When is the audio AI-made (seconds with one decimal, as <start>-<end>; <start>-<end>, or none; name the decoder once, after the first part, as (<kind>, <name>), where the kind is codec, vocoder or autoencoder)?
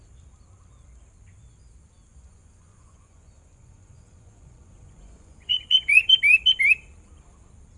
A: 2.1-6.1 (vocoder, Vocos)